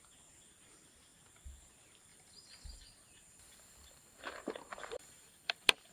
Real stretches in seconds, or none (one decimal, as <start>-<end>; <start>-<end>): 0.0-2.1